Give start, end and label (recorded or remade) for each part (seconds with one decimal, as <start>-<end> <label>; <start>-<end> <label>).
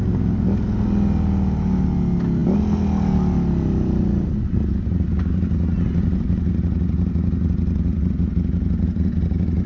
0.0-9.7 recorded